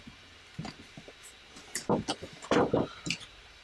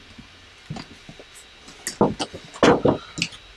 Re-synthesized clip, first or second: first